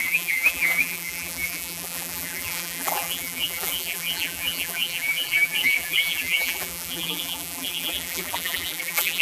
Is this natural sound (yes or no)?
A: no